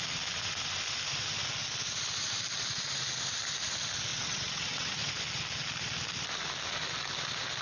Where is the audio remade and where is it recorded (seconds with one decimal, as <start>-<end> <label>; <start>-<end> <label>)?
0.0-4.1 recorded; 4.1-5.1 remade; 5.1-7.6 recorded